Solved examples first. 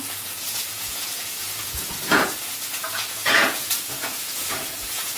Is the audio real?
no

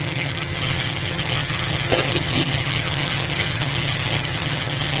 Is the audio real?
no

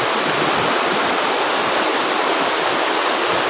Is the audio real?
yes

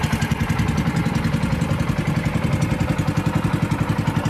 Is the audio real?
yes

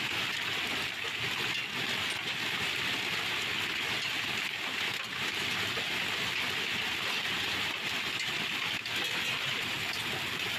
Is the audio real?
yes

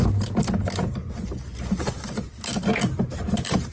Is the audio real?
yes